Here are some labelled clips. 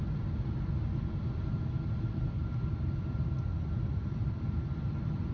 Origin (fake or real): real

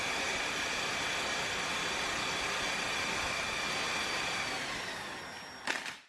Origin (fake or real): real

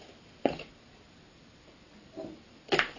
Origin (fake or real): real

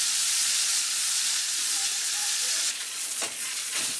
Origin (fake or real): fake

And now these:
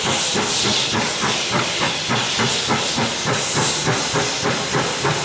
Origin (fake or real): real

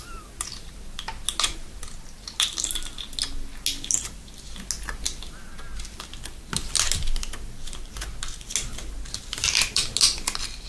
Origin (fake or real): real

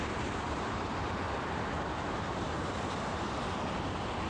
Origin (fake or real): real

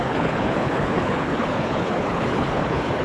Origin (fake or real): fake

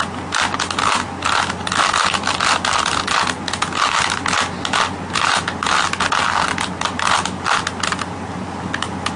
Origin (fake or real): real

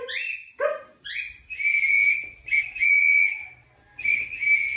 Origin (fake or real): real